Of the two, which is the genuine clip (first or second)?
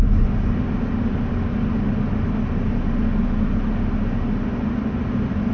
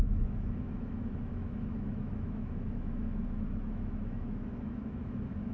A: first